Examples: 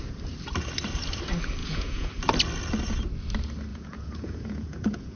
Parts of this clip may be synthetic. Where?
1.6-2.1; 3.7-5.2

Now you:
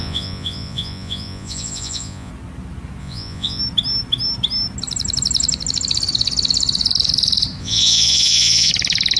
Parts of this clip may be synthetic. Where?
0.0-2.3; 3.0-3.6; 7.6-8.7